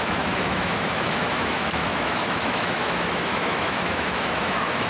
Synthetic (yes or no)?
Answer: yes